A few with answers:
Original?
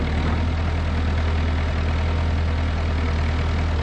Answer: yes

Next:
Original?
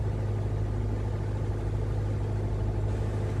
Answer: yes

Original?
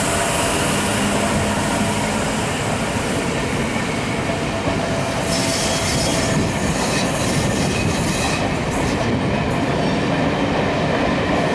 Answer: yes